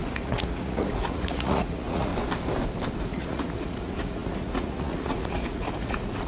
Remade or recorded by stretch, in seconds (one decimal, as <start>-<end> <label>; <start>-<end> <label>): 0.0-2.1 remade; 2.1-3.0 recorded; 3.0-6.3 remade